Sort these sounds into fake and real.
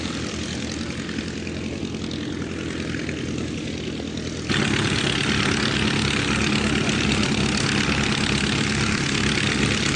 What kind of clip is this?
real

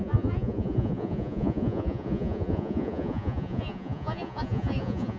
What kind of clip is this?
fake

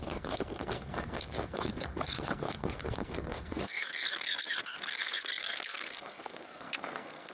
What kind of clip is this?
fake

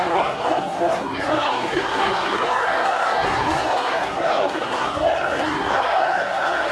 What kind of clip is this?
fake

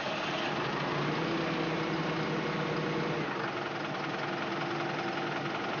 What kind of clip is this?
real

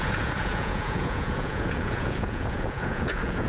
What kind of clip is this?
fake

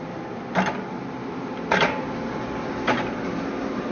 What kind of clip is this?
real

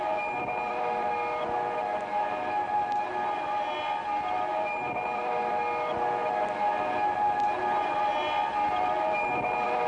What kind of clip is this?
real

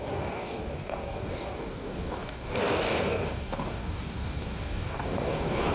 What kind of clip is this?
fake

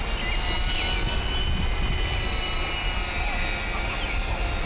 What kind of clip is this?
real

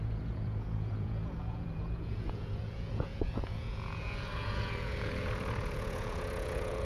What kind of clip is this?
fake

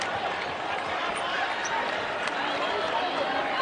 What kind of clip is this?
fake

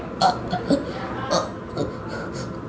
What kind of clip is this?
real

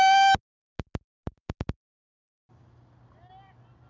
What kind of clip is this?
real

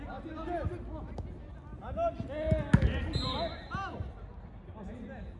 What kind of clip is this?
real